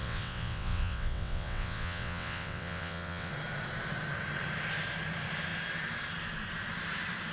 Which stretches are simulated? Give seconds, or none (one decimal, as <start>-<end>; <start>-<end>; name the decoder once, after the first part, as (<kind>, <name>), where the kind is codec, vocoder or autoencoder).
0.0-3.3 (vocoder, WaveNeXt)